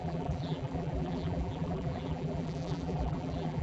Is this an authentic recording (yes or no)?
no